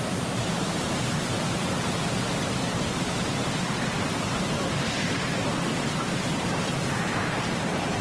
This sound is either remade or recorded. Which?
remade